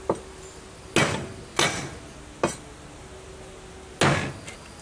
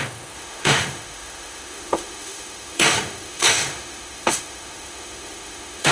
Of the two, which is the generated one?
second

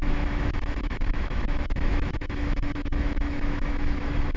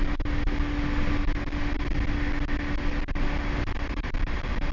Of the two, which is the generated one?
first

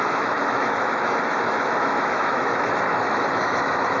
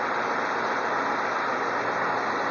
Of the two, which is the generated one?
first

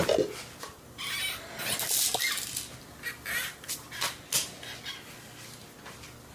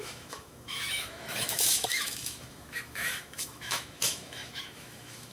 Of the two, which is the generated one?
second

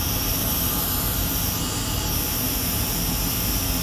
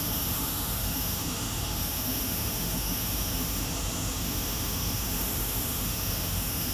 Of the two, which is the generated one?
second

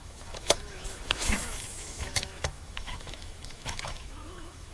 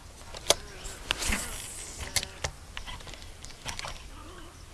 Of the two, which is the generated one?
first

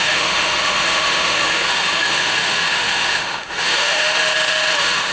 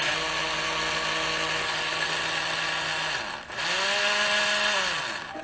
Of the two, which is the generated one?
first